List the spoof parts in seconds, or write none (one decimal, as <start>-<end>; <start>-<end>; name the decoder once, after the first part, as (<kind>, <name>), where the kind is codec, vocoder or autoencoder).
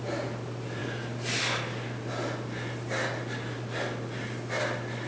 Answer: none